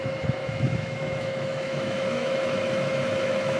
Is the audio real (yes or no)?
no